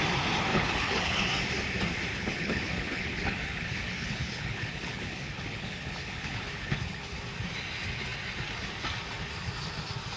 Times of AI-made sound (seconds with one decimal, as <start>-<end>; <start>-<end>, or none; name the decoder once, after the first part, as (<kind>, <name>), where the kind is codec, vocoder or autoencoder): 0.5-1.2 (codec, HILCodec); 2.1-7.2